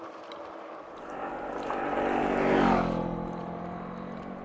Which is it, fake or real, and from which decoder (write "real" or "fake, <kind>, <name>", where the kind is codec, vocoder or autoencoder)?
real